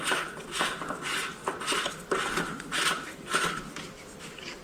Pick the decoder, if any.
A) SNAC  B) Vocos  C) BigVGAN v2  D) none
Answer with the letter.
D